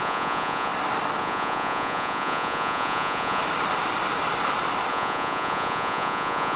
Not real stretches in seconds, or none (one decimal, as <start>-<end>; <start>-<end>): 0.0-0.7; 1.2-3.4; 4.9-6.6